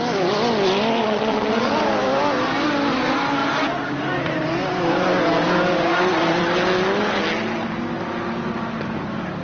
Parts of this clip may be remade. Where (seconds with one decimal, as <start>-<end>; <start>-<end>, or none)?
1.0-1.7